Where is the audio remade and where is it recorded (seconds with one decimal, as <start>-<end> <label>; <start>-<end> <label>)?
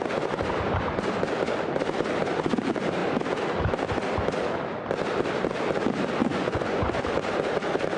0.0-6.2 recorded; 6.2-7.0 remade; 7.0-8.0 recorded